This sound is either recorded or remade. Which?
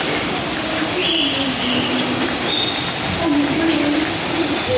recorded